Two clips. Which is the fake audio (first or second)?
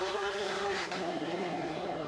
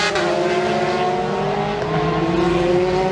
first